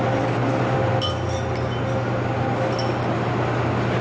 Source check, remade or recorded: recorded